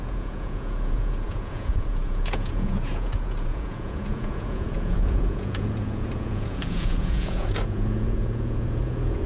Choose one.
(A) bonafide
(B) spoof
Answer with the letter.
B